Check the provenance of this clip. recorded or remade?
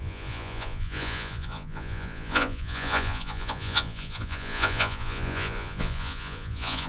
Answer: remade